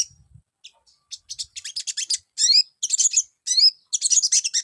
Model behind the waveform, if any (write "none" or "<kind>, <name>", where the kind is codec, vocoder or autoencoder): none